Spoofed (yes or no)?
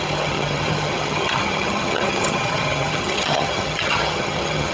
yes